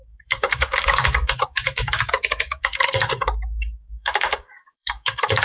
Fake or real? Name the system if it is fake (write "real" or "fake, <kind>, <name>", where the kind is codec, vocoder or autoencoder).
fake, codec, DAC